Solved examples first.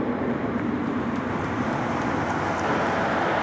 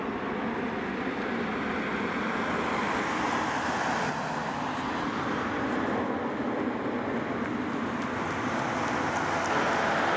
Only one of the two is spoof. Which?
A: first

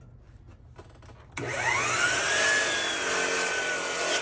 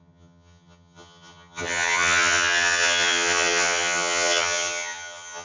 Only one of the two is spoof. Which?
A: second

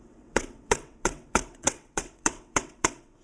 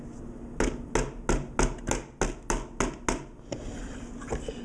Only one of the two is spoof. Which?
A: first